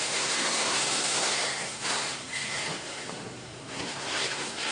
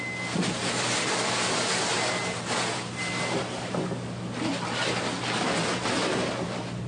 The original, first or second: second